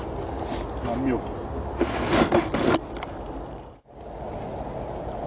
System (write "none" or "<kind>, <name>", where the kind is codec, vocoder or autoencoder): none